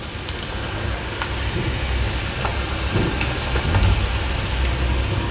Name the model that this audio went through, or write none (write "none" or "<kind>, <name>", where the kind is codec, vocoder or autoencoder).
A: none